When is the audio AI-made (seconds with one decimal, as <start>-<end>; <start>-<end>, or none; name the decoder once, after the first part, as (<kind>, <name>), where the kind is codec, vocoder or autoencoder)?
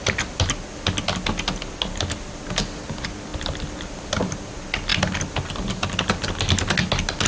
none